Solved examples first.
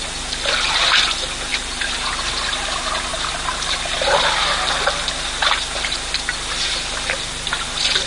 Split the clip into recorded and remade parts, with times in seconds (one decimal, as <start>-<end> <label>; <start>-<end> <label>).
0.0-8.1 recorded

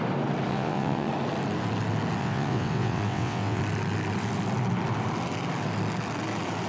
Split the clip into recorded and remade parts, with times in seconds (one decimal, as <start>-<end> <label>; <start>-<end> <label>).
0.0-0.5 recorded; 0.5-1.1 remade; 1.1-2.2 recorded; 2.2-3.6 remade; 3.6-6.7 recorded

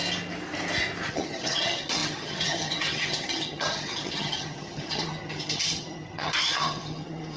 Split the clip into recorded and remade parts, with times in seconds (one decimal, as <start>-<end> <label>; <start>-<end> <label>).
0.0-1.1 recorded; 1.1-7.4 remade